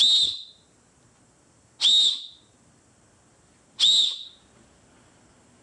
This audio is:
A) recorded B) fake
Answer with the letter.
A